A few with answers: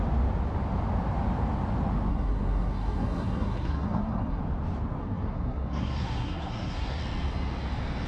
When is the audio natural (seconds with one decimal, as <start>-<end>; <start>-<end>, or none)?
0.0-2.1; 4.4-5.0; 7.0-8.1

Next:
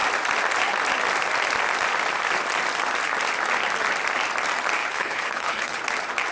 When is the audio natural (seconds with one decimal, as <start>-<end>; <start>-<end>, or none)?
0.0-4.8; 5.8-6.3

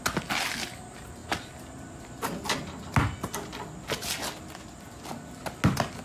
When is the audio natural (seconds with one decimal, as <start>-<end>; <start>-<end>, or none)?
0.0-6.0

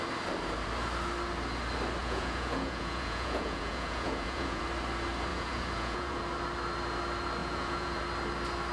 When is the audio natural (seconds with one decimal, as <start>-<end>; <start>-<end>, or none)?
0.0-2.0; 4.6-5.3; 6.2-7.4; 8.0-8.7